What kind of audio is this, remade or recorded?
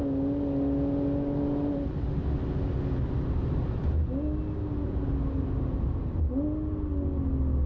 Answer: recorded